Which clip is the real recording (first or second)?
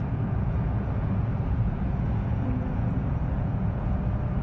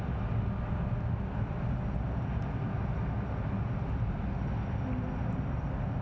second